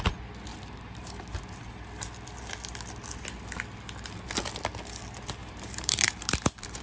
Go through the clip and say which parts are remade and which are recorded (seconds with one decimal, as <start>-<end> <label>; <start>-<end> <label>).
0.0-0.5 recorded; 0.5-1.7 remade; 1.7-5.4 recorded; 5.4-6.8 remade

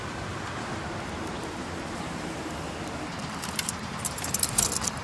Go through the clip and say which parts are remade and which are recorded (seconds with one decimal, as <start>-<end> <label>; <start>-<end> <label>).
0.0-1.2 recorded; 1.2-2.4 remade; 2.4-3.1 recorded; 3.1-4.5 remade; 4.5-5.0 recorded

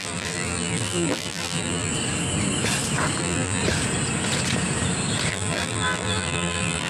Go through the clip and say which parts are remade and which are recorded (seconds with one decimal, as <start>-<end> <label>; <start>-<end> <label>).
0.0-1.9 remade; 1.9-3.2 recorded; 3.2-3.6 remade; 3.6-5.3 recorded; 5.3-6.9 remade

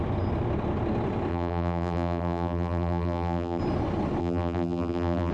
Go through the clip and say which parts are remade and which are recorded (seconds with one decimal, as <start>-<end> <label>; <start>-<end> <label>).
0.0-1.3 recorded; 1.3-3.6 remade; 3.6-4.2 recorded; 4.2-5.3 remade

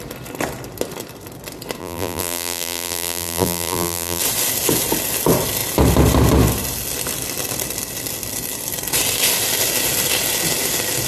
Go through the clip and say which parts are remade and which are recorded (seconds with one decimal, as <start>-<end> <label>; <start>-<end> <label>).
0.0-1.8 recorded; 1.8-4.2 remade; 4.2-11.1 recorded

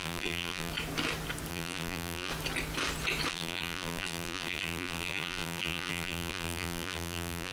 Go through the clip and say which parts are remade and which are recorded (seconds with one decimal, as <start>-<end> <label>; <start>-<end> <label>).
0.0-0.7 remade; 0.7-1.5 recorded; 1.5-2.3 remade; 2.3-3.3 recorded; 3.3-7.5 remade

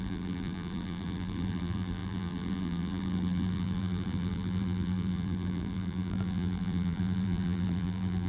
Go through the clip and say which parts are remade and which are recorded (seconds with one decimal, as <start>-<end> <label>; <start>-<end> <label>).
0.0-8.3 remade

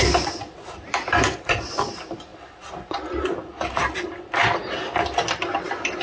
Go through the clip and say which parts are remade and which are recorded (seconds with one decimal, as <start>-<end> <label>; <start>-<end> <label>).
0.0-6.0 recorded